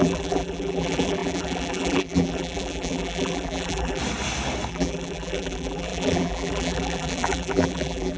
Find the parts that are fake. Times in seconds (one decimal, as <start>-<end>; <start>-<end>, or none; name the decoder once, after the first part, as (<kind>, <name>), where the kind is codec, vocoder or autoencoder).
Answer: 0.0-4.0 (vocoder, BigVGAN v2); 4.7-8.2